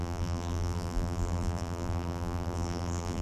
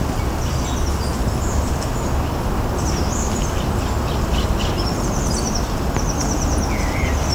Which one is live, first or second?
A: second